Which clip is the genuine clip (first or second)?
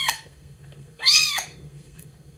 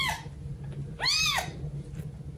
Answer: second